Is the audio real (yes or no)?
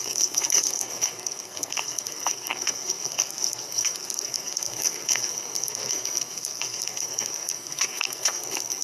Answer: no